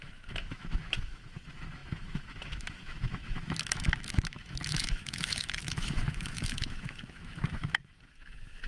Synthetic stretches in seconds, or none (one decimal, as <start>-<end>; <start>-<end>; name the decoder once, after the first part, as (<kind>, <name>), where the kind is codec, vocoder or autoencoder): 0.0-8.7 (autoencoder, DAC-VAE)